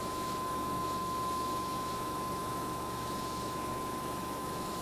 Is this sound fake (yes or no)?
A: yes